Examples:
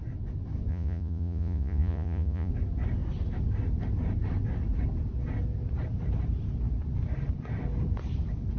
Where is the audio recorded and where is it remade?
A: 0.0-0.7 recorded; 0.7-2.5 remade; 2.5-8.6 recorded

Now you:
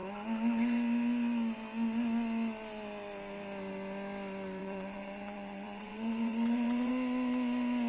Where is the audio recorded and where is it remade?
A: 0.0-4.6 recorded; 4.6-6.9 remade; 6.9-7.9 recorded

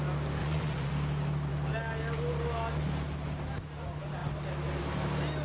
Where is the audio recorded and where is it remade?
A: 0.0-0.4 recorded; 0.4-0.9 remade; 0.9-5.4 recorded

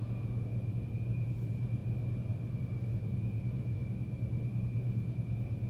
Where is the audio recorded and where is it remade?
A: 0.0-1.8 remade; 1.8-2.9 recorded; 2.9-3.8 remade; 3.8-4.6 recorded; 4.6-5.7 remade

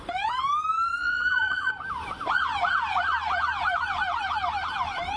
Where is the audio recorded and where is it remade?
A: 0.0-1.0 recorded; 1.0-1.7 remade; 1.7-5.2 recorded

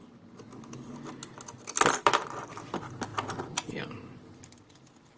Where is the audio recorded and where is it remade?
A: 0.0-5.2 recorded

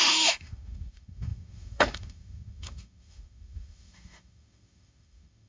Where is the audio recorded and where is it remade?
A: 0.0-5.5 remade